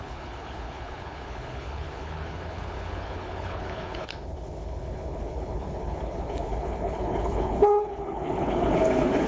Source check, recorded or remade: remade